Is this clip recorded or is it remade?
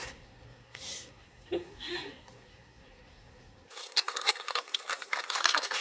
remade